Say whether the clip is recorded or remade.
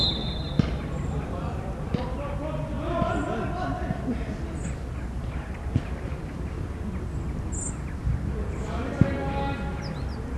recorded